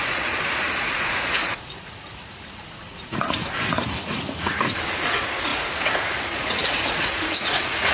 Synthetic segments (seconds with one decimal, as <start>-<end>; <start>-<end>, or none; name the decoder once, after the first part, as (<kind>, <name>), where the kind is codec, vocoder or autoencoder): 0.0-7.9 (vocoder, Vocos)